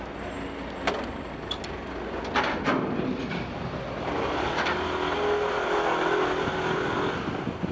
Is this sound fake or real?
real